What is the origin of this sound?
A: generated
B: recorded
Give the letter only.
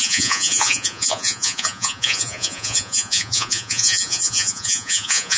A